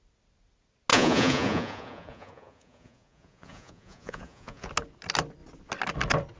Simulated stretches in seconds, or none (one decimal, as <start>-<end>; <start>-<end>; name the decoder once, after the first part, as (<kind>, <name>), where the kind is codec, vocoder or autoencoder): 0.9-4.7 (vocoder, Vocos)